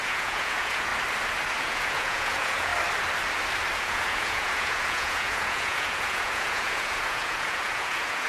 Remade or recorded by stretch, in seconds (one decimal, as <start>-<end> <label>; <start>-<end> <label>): 0.0-0.9 remade; 0.9-1.6 recorded; 1.6-2.7 remade; 2.7-3.8 recorded; 3.8-8.3 remade